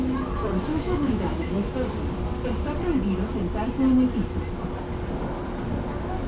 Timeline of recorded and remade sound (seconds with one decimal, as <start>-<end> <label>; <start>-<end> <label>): 0.0-0.7 recorded; 0.7-1.7 remade; 1.7-6.3 recorded